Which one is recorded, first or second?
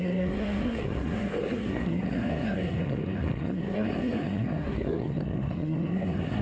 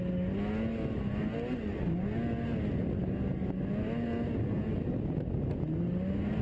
second